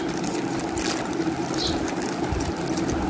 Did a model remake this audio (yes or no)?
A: no